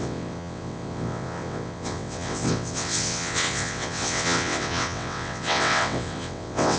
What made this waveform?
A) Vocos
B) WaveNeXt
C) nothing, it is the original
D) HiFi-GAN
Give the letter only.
B